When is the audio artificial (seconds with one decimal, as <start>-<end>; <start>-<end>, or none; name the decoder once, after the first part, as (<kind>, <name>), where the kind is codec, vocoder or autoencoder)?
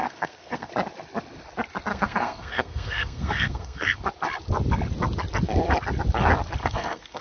0.0-0.7 (codec, SNAC); 1.9-4.0; 6.6-7.2